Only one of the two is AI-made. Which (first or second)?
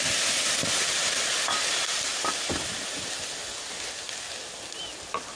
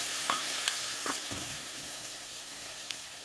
second